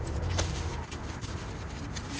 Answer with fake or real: fake